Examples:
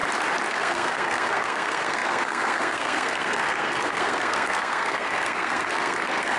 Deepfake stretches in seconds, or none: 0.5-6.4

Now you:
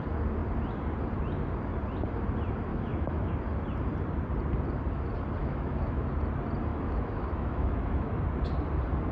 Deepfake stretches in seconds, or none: 2.7-3.3; 5.4-6.1; 6.7-8.2

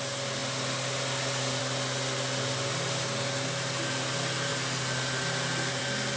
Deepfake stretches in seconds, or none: none

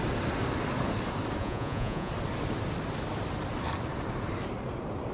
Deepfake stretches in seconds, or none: 1.4-2.1

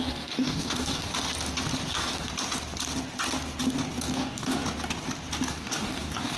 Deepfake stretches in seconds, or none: 0.0-1.1; 1.9-2.3; 4.0-4.6; 5.5-6.4

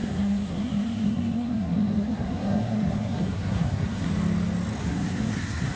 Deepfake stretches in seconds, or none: 0.0-4.1; 4.8-5.8

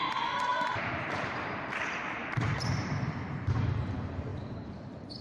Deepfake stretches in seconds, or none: 0.0-5.2